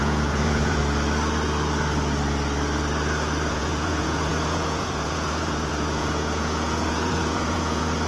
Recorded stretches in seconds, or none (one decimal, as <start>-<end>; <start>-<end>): 0.8-3.5